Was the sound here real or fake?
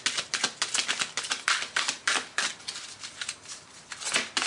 real